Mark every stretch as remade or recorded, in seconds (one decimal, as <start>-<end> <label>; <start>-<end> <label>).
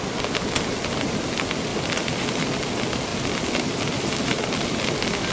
0.0-5.3 recorded